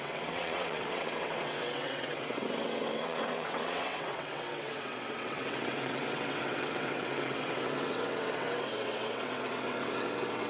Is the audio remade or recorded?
remade